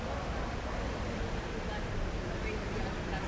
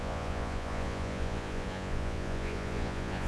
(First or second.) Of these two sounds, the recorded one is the first